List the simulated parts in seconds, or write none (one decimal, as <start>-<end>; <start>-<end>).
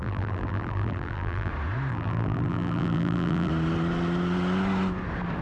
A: 0.0-1.5; 1.9-3.5